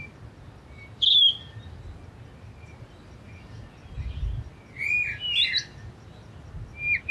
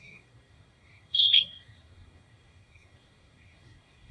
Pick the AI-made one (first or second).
second